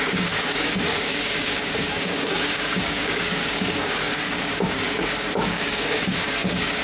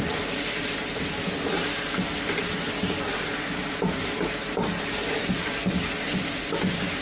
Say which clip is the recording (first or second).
second